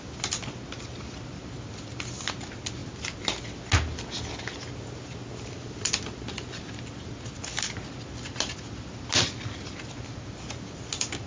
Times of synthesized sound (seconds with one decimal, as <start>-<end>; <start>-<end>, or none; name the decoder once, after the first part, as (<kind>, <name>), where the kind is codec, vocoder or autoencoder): none